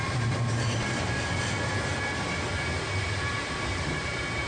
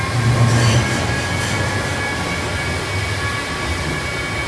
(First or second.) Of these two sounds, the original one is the second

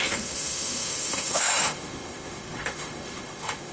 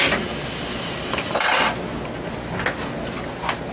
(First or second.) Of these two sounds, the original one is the second